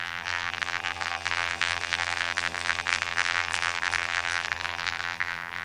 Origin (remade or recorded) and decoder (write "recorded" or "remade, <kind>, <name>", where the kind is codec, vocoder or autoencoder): remade, vocoder, BigVGAN v2